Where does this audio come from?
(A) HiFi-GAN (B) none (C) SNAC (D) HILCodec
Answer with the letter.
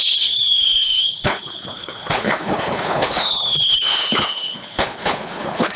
D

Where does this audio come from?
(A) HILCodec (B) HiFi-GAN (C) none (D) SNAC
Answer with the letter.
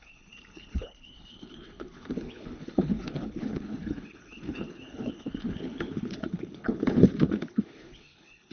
A